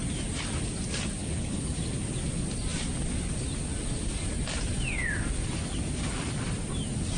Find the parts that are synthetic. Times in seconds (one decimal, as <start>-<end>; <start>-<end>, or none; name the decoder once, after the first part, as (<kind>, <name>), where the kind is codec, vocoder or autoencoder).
1.2-1.7 (codec, HILCodec)